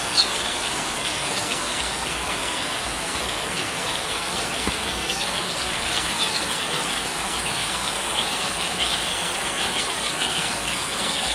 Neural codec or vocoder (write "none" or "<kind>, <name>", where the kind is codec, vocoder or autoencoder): codec, SNAC